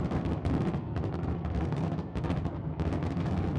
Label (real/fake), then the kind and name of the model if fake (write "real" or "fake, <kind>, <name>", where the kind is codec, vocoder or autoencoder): fake, codec, SNAC